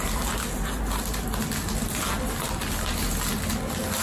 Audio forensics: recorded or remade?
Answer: recorded